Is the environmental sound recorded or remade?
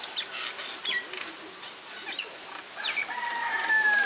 recorded